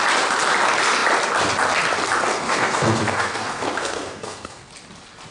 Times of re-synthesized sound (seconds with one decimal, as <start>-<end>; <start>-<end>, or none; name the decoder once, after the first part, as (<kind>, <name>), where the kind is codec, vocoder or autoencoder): 2.3-4.7 (codec, SNAC)